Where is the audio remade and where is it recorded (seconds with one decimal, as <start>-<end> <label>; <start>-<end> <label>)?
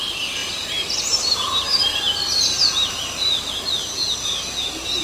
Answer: 0.0-1.9 remade; 1.9-5.0 recorded